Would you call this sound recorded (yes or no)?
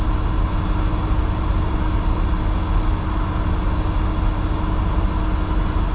yes